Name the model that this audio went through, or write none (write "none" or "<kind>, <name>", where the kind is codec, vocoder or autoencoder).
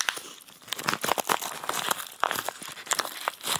vocoder, BigVGAN v2